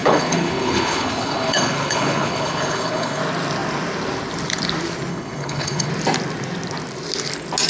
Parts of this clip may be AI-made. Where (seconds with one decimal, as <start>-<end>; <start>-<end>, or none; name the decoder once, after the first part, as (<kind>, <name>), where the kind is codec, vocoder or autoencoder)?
0.0-3.2 (codec, HILCodec); 5.1-5.9

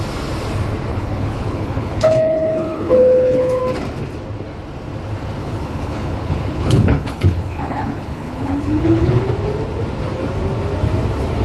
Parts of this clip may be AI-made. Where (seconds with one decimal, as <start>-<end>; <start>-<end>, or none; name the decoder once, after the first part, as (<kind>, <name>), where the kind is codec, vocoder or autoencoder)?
0.9-3.6 (codec, HILCodec); 5.4-9.2

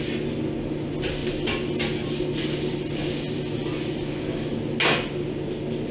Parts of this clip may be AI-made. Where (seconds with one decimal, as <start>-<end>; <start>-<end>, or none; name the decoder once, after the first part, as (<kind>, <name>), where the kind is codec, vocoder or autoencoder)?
none

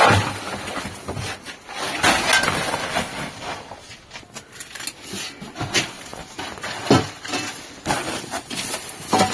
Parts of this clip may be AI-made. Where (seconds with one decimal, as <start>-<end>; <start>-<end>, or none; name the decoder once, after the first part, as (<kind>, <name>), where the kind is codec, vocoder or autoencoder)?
none

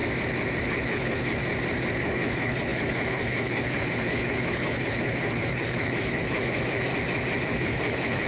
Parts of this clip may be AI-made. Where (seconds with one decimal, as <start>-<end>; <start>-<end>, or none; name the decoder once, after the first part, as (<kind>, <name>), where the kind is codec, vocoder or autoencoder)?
0.6-1.4 (codec, HILCodec); 2.0-6.9; 7.4-8.3